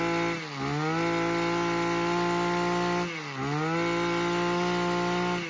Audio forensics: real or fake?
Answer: real